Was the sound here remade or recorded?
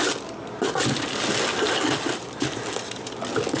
recorded